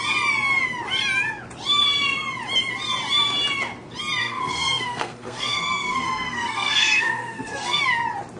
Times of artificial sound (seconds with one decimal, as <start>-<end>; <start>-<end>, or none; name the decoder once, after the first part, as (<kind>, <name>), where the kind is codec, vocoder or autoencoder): 4.2-7.8 (codec, SNAC)